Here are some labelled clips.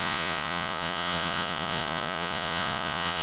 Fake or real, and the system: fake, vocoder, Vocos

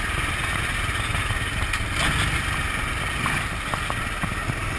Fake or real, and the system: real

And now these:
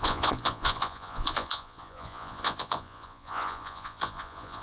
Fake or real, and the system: fake, vocoder, Vocos